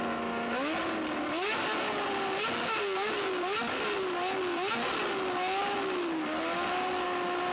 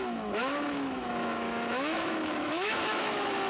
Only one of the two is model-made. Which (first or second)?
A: second